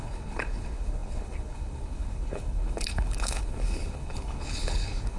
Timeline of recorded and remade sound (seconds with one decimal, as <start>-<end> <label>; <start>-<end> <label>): 0.0-5.2 remade